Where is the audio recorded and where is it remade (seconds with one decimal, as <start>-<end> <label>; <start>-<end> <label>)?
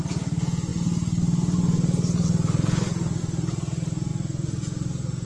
0.0-5.3 recorded